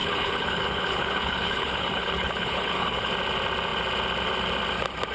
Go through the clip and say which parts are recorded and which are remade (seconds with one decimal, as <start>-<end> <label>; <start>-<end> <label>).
0.0-3.1 remade; 3.1-5.1 recorded